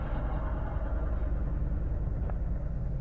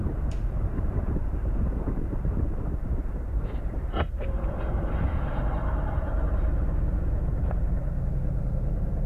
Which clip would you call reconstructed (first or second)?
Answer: second